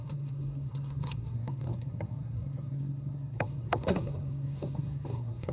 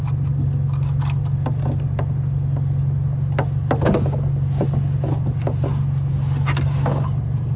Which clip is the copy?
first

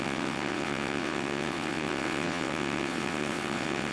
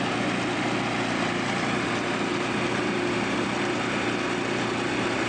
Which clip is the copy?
first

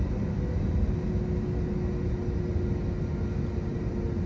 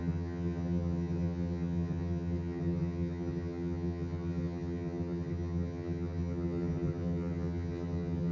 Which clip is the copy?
second